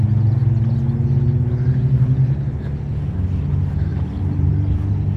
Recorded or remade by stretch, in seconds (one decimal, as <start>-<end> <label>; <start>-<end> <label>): 0.0-3.9 recorded; 3.9-4.5 remade; 4.5-5.2 recorded